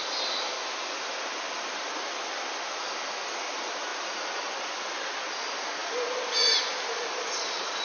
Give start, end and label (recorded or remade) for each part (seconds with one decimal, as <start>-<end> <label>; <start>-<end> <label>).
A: 0.0-7.8 recorded